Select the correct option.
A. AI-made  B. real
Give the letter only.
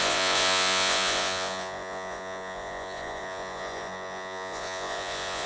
A